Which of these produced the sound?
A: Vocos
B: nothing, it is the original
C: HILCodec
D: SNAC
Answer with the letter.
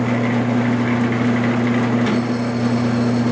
B